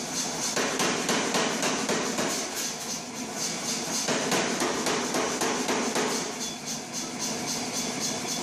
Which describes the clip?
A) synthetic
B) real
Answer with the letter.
B